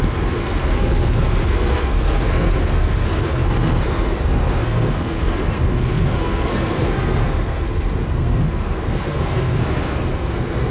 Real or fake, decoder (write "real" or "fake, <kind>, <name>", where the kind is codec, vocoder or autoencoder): fake, codec, SNAC